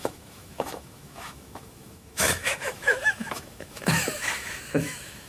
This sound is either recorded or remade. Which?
remade